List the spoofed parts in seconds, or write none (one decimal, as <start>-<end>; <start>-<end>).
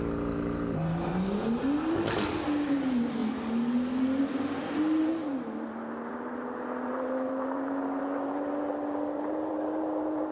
0.0-1.6; 2.3-3.2; 4.2-5.2; 6.1-10.3